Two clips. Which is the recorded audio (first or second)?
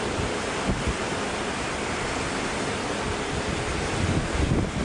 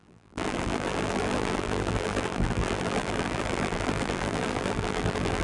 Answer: first